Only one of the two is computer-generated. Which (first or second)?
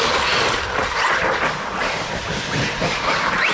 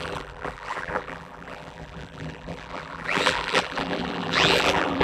second